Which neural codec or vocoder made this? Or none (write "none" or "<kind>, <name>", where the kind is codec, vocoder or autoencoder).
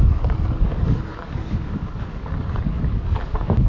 codec, DAC